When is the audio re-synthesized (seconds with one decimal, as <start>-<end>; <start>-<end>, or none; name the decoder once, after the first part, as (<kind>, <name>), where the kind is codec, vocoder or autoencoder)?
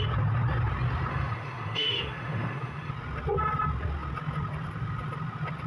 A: 1.1-2.9 (autoencoder, DAC-VAE)